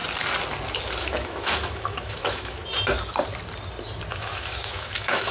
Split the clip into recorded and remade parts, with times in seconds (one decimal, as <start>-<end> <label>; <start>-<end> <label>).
0.0-1.0 recorded; 1.0-2.6 remade; 2.6-4.1 recorded; 4.1-5.3 remade